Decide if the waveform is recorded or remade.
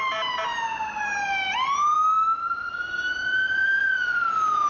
recorded